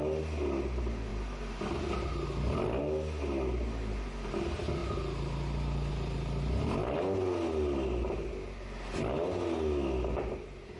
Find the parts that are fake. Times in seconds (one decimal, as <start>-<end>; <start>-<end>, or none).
none